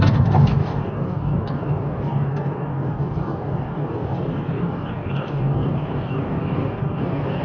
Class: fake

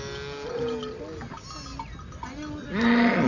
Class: real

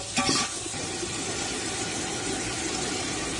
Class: real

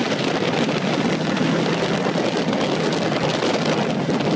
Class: real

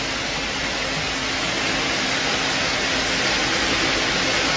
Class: real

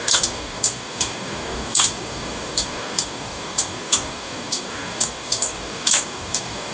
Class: fake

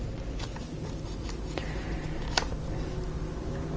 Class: real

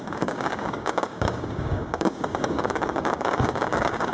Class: fake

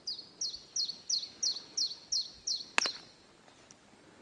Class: real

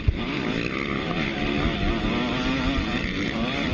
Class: real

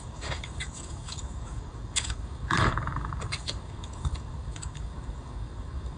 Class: fake